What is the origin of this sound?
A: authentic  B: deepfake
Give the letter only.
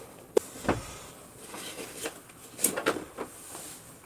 A